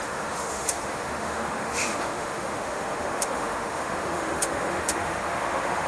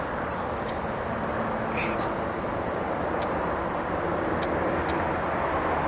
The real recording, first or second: second